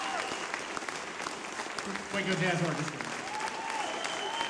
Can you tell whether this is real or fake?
real